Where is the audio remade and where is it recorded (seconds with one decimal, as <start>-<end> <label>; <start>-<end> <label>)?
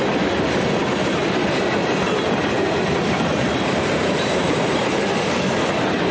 0.0-1.2 recorded; 1.2-4.8 remade; 4.8-6.1 recorded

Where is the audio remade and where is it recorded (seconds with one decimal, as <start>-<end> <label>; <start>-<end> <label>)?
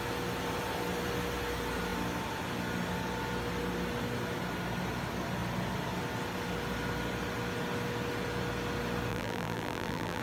0.0-9.1 recorded; 9.1-10.2 remade